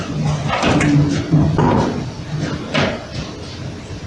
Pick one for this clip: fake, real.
real